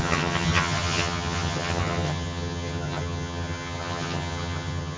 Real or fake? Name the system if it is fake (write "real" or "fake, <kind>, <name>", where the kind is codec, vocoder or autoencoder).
fake, vocoder, HiFi-GAN